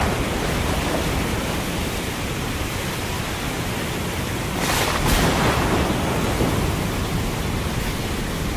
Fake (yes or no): no